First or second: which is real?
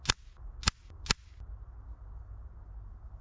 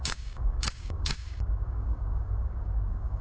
first